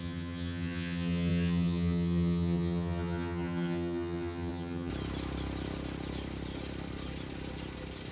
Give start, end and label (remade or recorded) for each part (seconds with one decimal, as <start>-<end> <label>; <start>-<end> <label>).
0.0-4.9 remade; 4.9-8.1 recorded

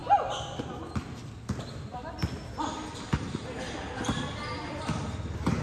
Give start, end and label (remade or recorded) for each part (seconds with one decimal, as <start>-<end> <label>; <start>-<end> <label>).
0.0-5.6 recorded

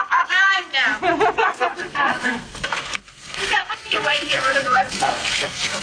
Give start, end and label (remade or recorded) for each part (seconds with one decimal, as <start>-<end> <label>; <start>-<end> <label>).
0.0-0.7 remade; 0.7-1.3 recorded; 1.3-5.8 remade

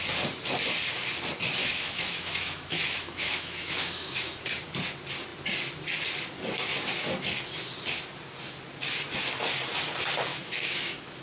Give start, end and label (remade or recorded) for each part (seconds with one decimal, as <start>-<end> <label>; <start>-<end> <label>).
0.0-1.6 recorded; 1.6-4.4 remade; 4.4-10.3 recorded; 10.3-11.2 remade

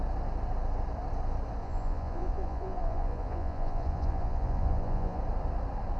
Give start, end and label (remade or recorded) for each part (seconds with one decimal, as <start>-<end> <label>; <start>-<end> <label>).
0.0-1.6 recorded; 1.6-5.2 remade; 5.2-6.0 recorded

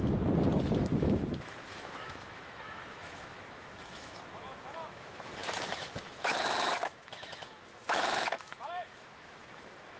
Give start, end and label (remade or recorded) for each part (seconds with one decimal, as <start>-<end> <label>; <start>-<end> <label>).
0.0-1.0 recorded; 1.0-10.0 remade

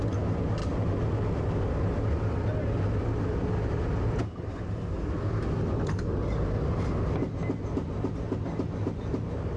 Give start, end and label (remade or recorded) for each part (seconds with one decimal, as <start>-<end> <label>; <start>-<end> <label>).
0.0-9.6 recorded